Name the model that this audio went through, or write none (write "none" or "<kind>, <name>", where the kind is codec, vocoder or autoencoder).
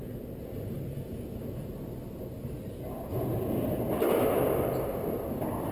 none